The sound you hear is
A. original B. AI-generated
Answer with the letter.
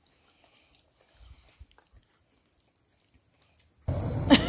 A